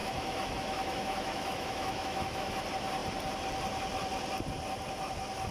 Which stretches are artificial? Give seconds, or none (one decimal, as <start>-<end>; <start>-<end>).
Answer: 0.0-2.6